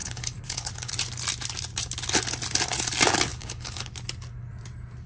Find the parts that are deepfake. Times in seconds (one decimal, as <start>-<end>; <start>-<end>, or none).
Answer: 0.0-0.9; 3.3-3.9